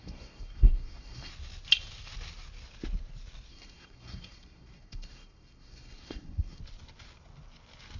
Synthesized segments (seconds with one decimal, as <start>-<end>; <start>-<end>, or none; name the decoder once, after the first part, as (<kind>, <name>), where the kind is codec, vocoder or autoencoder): 0.0-1.3 (codec, SNAC); 3.5-6.6